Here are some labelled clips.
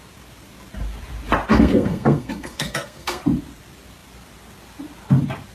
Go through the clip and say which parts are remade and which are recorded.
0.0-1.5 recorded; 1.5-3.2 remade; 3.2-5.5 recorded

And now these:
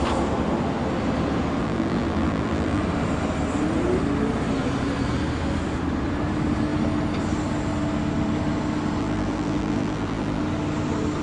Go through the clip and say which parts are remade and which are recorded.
0.0-1.6 recorded; 1.6-2.8 remade; 2.8-9.0 recorded; 9.0-10.4 remade; 10.4-11.2 recorded

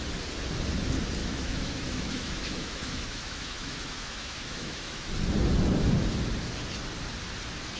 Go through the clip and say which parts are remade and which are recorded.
0.0-1.2 recorded; 1.2-5.1 remade; 5.1-7.8 recorded